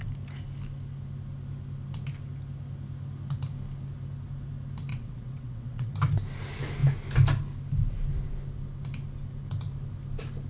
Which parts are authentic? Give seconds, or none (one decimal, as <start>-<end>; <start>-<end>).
0.0-4.9; 5.9-10.5